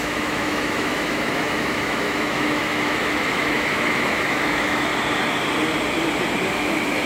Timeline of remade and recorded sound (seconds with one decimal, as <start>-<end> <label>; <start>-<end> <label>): 0.0-4.9 remade; 4.9-6.5 recorded; 6.5-7.1 remade